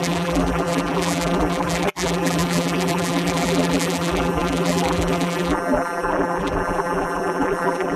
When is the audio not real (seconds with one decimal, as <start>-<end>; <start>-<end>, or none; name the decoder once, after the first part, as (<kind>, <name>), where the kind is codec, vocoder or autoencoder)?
0.0-8.0 (vocoder, BigVGAN v2)